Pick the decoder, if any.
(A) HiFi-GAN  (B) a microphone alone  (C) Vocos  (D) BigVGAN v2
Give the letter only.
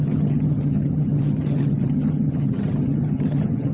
A